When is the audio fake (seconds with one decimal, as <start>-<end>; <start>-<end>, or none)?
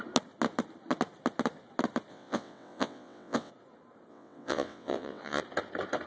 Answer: 2.1-3.5; 4.1-5.4